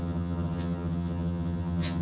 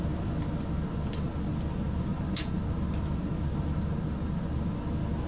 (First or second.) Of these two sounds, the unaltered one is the second